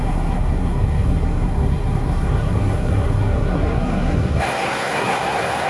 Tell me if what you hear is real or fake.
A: fake